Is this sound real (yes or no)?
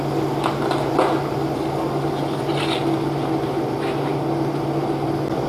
yes